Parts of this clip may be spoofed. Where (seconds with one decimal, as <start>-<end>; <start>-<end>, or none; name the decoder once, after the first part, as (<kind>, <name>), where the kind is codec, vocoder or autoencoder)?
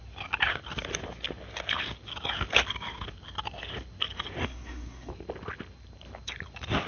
4.4-5.1 (codec, SNAC)